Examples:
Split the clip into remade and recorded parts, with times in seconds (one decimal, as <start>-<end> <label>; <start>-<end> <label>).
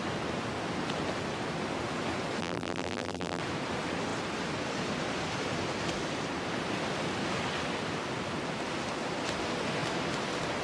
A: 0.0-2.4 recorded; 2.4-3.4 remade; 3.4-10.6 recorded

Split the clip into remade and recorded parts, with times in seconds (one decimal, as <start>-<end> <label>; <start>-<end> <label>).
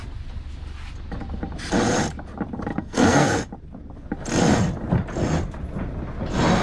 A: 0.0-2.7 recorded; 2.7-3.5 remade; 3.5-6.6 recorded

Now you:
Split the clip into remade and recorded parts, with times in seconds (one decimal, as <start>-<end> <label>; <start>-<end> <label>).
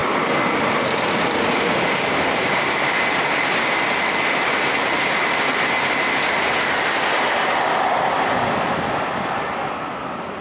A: 0.0-10.4 recorded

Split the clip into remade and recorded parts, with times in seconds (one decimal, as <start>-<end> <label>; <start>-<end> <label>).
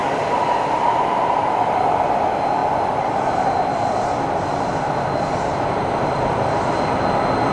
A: 0.0-7.5 recorded